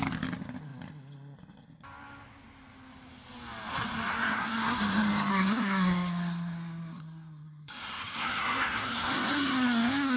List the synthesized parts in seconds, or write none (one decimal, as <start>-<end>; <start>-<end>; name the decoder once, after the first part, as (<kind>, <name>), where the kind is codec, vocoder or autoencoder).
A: 4.1-4.8 (codec, SNAC); 5.3-10.2